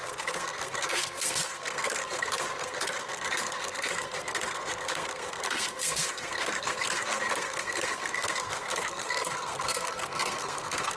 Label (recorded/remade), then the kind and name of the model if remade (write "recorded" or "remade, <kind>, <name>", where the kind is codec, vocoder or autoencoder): remade, codec, SNAC